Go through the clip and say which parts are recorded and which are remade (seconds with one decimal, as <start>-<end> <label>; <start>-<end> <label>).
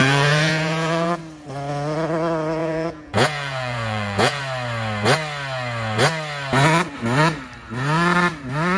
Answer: 0.0-1.2 remade; 1.2-2.6 recorded; 2.6-4.4 remade; 4.4-8.8 recorded